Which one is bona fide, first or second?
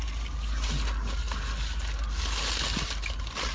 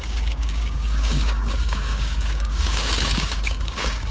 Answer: first